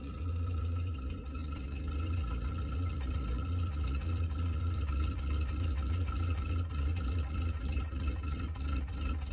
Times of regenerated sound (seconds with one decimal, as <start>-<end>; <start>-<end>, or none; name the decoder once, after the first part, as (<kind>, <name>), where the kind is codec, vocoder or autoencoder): 0.0-9.3 (vocoder, Vocos)